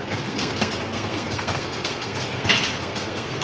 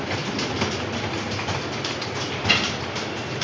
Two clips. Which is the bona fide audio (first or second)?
second